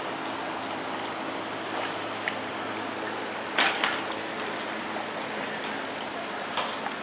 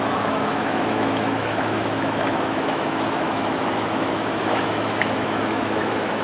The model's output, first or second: second